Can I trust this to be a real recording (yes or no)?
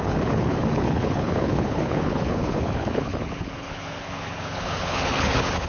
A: no